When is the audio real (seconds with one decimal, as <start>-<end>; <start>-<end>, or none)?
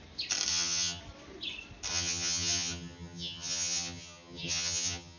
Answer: 0.0-0.5; 1.0-1.9